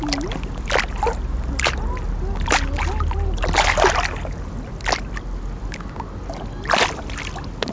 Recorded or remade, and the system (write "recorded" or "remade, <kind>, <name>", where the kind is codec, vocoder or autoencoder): recorded